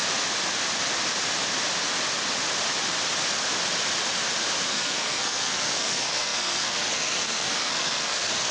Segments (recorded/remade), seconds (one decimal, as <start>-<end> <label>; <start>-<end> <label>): 0.0-4.7 recorded; 4.7-8.5 remade